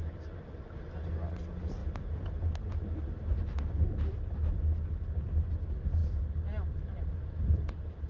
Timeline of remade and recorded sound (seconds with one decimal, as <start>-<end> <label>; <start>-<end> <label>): 0.0-8.1 recorded